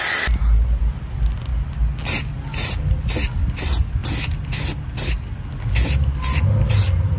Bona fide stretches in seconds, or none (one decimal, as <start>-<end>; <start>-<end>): 0.0-7.2